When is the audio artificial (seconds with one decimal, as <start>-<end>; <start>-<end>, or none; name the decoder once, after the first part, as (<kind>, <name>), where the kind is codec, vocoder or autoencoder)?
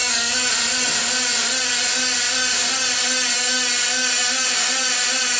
0.0-0.5 (codec, DAC)